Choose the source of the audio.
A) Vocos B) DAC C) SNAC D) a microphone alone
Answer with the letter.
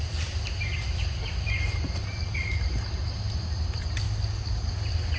D